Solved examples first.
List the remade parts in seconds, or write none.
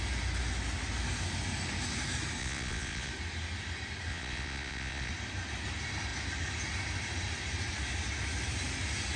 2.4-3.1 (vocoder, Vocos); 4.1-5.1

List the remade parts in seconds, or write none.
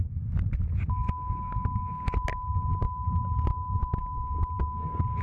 none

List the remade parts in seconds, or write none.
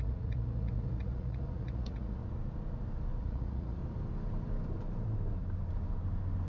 0.0-2.2 (vocoder, Vocos); 3.2-3.8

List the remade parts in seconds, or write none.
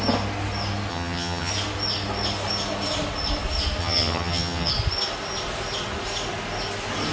0.9-1.5 (vocoder, HiFi-GAN); 3.8-4.7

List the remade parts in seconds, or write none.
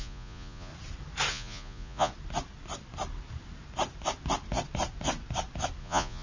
0.0-0.7 (vocoder, Vocos); 1.3-2.1; 5.8-6.2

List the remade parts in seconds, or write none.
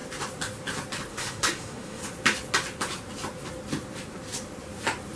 1.1-2.0 (autoencoder, DAC-VAE)